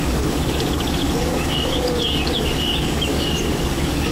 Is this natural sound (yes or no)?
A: no